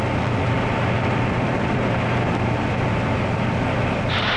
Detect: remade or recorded recorded